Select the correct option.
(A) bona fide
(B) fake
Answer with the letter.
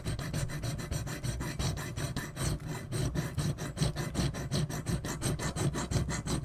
A